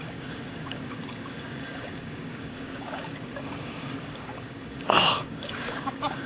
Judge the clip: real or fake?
fake